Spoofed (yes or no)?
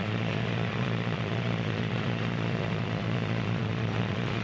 yes